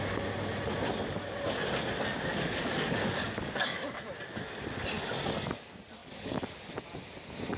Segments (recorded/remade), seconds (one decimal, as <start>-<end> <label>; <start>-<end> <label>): 0.0-2.3 recorded; 2.3-3.8 remade; 3.8-6.0 recorded; 6.0-6.7 remade; 6.7-7.6 recorded

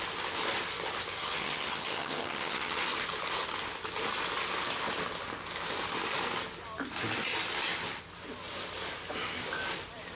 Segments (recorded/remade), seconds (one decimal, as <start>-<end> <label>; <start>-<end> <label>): 0.0-1.2 recorded; 1.2-2.8 remade; 2.8-10.1 recorded

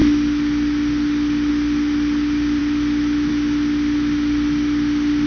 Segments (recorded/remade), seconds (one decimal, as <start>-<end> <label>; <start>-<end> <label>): 0.0-5.3 recorded

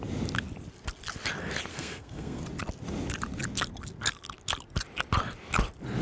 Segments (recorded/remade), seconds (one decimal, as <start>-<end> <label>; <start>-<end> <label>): 0.0-1.7 recorded; 1.7-2.4 remade; 2.4-6.0 recorded